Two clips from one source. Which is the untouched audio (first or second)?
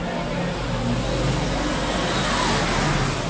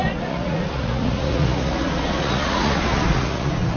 first